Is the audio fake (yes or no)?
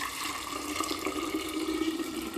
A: yes